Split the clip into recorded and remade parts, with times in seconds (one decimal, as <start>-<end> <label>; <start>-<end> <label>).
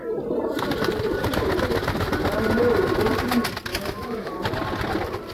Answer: 0.0-3.7 recorded; 3.7-4.3 remade; 4.3-5.3 recorded